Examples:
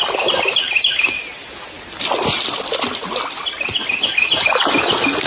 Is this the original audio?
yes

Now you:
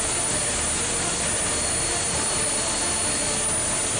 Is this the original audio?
yes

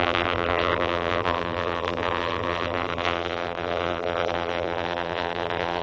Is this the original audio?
no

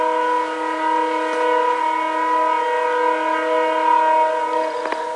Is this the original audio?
yes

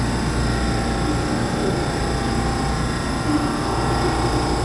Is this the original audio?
yes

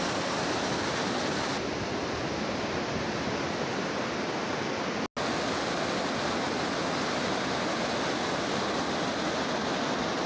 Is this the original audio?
yes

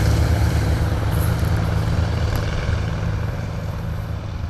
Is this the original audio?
no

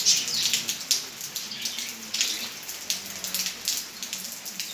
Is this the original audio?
yes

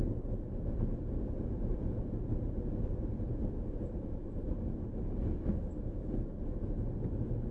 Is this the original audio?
no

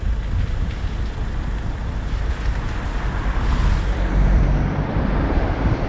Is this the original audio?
no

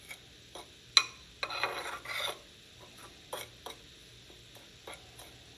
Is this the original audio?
yes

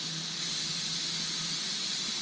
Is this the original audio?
no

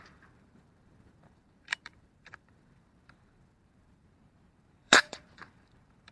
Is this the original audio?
no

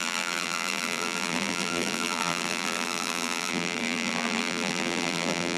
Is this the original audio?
no